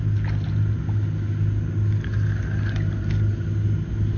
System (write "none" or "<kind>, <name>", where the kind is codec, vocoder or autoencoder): none